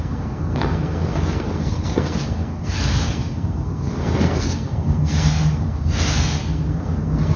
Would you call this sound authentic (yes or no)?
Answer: no